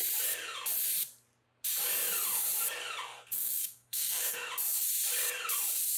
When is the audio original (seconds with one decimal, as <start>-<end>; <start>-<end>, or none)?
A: 0.0-3.1; 4.5-6.0